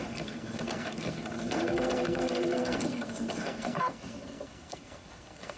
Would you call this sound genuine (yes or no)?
no